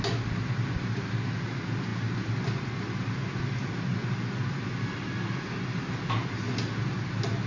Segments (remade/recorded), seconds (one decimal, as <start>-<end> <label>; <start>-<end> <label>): 0.0-7.5 recorded

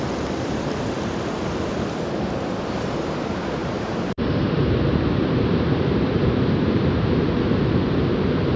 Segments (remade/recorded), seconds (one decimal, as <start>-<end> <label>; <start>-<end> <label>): 0.0-3.6 recorded; 3.6-7.2 remade; 7.2-8.6 recorded

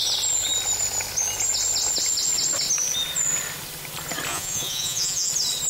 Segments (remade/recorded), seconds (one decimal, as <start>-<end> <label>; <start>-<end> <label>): 0.0-4.3 recorded; 4.3-5.3 remade; 5.3-5.7 recorded

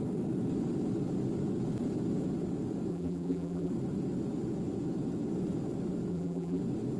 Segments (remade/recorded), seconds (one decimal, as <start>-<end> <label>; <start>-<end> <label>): 0.0-2.9 recorded; 2.9-3.7 remade; 3.7-6.1 recorded; 6.1-6.6 remade; 6.6-7.0 recorded

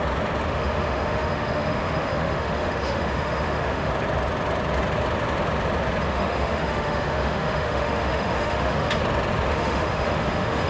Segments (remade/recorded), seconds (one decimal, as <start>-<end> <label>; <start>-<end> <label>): 0.0-0.5 recorded; 0.5-3.9 remade; 3.9-6.1 recorded; 6.1-9.0 remade; 9.0-9.5 recorded; 9.5-10.7 remade

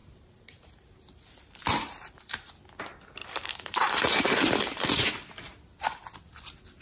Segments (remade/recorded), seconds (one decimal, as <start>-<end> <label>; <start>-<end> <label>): 0.0-2.5 remade; 2.5-3.2 recorded; 3.2-5.1 remade; 5.1-6.8 recorded